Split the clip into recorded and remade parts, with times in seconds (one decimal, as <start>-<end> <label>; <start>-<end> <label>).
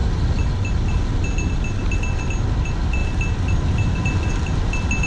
0.0-5.1 recorded